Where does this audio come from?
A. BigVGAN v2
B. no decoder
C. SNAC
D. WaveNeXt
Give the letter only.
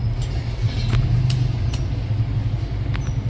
B